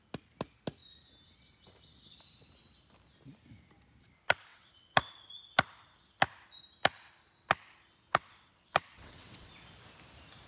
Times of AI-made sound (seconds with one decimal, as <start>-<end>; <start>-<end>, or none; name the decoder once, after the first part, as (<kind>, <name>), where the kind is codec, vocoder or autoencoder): 4.5-5.3 (vocoder, WaveNeXt); 8.1-9.5